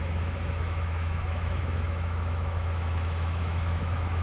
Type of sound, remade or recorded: remade